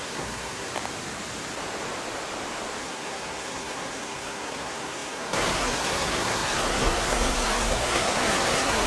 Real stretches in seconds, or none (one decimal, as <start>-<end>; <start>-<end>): 0.7-2.8